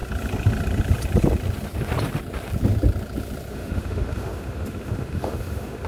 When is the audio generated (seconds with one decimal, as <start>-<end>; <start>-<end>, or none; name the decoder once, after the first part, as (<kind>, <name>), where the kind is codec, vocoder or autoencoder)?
3.5-5.9 (autoencoder, DAC-VAE)